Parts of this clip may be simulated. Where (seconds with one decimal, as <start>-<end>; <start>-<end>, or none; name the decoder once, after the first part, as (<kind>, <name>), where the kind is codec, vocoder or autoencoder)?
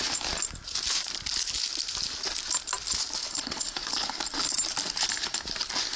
3.2-4.2 (codec, HILCodec)